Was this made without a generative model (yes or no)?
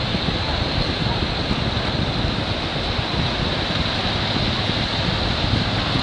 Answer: yes